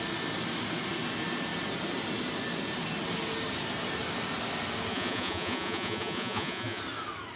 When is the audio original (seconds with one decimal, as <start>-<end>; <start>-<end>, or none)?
0.0-4.9; 6.8-7.4

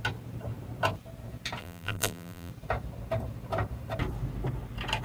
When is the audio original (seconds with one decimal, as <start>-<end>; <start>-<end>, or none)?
0.0-1.6; 2.5-5.0

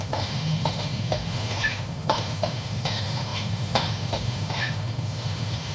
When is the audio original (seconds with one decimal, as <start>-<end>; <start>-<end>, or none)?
none

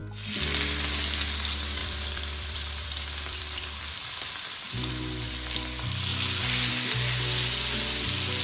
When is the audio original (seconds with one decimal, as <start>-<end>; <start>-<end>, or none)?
0.0-1.8; 4.9-8.4

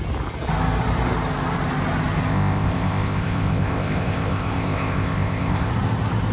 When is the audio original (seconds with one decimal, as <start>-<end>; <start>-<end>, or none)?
0.0-2.3; 5.7-6.3